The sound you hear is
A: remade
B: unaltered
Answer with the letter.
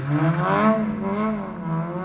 B